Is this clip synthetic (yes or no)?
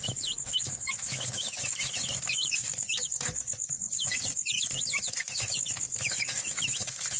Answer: yes